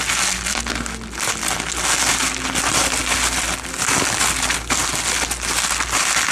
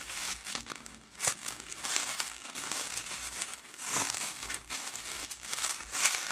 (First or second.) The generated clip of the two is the second